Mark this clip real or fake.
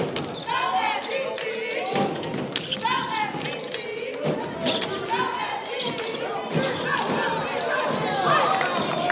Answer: real